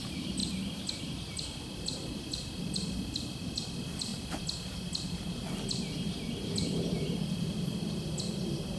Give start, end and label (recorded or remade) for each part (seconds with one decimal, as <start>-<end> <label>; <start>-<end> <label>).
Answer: 0.0-0.4 remade; 0.4-2.6 recorded; 2.6-4.1 remade; 4.1-6.5 recorded; 6.5-8.8 remade